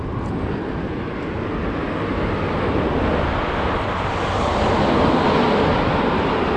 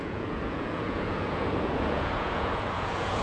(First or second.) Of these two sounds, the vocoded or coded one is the second